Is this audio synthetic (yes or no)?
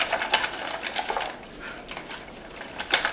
no